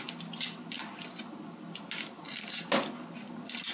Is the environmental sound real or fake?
real